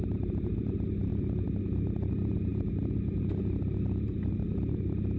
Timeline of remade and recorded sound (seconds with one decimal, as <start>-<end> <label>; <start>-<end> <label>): 0.0-5.2 recorded